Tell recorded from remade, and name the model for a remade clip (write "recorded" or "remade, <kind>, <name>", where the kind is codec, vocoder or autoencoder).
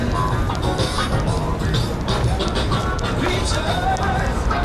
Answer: recorded